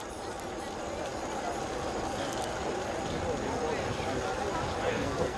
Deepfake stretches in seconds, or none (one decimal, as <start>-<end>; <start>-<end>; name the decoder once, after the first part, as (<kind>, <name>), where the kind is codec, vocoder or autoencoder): 4.9-5.4 (codec, SNAC)